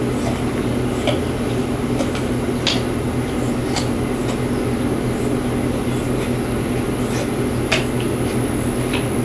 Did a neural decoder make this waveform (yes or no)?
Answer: no